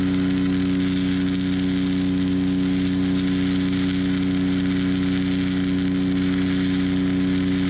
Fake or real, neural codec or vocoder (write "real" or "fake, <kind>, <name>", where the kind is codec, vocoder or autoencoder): real